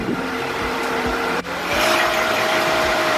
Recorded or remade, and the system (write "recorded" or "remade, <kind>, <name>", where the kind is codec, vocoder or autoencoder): remade, vocoder, BigVGAN v2